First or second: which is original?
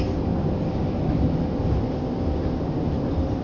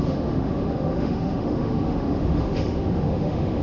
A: first